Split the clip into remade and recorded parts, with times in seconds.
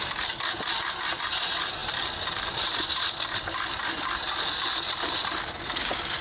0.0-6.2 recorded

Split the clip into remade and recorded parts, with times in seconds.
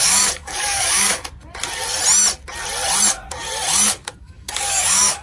0.0-1.1 remade; 1.1-4.2 recorded; 4.2-5.2 remade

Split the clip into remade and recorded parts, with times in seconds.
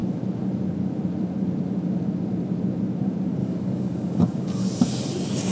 0.0-3.4 recorded; 3.4-4.5 remade; 4.5-5.5 recorded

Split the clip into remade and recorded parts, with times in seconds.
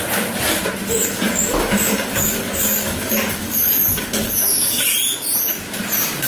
0.0-1.0 recorded; 1.0-4.8 remade; 4.8-6.3 recorded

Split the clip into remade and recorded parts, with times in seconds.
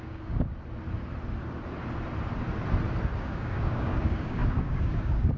0.0-0.5 remade; 0.5-3.2 recorded; 3.2-5.4 remade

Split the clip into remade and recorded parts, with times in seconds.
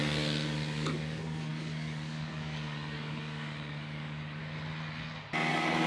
0.0-4.4 remade; 4.4-5.5 recorded; 5.5-5.9 remade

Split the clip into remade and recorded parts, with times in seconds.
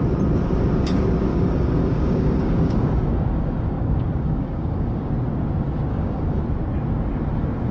0.0-1.3 recorded; 1.3-5.1 remade; 5.1-5.9 recorded; 5.9-6.4 remade; 6.4-7.7 recorded